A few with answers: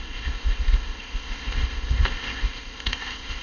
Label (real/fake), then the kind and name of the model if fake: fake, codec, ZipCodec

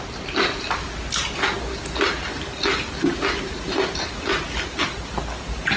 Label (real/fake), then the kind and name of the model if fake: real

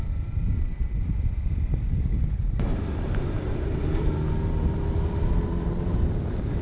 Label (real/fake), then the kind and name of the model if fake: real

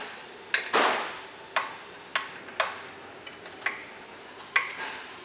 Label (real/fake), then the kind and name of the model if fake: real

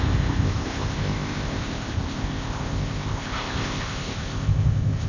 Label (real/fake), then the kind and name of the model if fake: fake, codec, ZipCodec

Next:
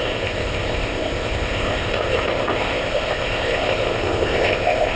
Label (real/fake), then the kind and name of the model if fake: fake, codec, ZipCodec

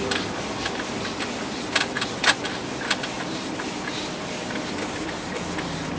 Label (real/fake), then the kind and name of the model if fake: real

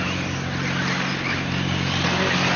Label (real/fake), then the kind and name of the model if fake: real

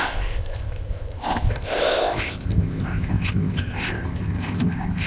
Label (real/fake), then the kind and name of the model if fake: fake, codec, ZipCodec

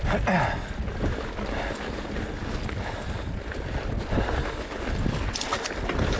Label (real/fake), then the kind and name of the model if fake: real